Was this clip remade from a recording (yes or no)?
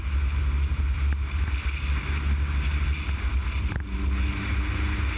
no